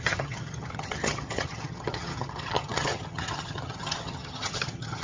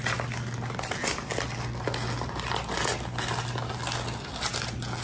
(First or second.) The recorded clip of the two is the second